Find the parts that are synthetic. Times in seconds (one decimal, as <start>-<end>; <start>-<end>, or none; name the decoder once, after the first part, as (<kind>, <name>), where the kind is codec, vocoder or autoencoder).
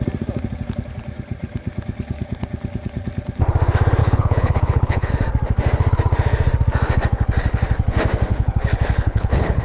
4.0-5.1 (codec, HILCodec); 8.3-9.6